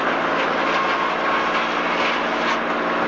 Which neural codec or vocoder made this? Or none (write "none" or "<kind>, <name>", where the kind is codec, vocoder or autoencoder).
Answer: none